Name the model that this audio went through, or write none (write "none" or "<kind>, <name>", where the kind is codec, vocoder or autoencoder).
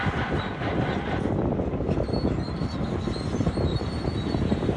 none